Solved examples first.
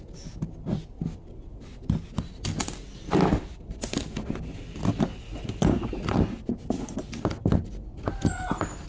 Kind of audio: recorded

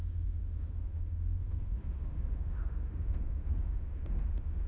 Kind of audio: remade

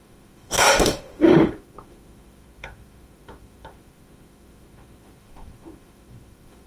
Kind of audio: remade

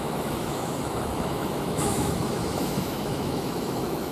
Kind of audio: remade